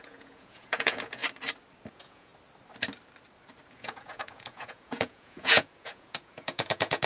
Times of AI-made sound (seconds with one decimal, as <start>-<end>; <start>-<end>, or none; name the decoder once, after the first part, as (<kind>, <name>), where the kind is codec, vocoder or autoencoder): 0.0-1.2 (vocoder, Vocos); 1.9-2.3; 3.7-7.1